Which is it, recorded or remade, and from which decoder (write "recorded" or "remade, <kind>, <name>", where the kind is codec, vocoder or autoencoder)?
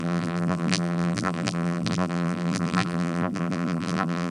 remade, vocoder, BigVGAN v2